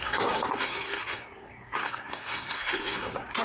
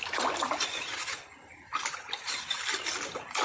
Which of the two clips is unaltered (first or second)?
second